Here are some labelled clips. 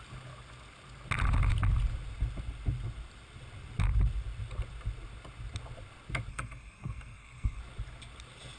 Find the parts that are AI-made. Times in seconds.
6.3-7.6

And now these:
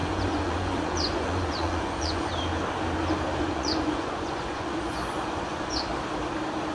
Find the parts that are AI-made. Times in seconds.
0.0-2.3; 3.4-5.9

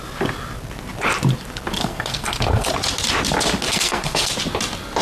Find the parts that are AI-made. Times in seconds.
1.8-2.7; 3.7-4.3